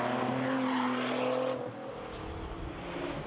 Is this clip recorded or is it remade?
recorded